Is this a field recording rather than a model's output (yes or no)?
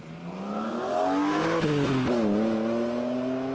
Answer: yes